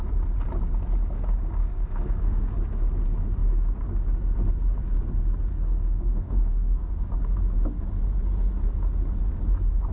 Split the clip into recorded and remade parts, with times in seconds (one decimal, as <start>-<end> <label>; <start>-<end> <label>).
0.0-1.6 recorded; 1.6-2.5 remade; 2.5-5.5 recorded; 5.5-7.1 remade; 7.1-9.9 recorded